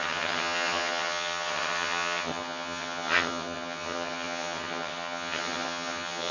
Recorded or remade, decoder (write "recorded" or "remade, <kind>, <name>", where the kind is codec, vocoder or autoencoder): remade, vocoder, HiFi-GAN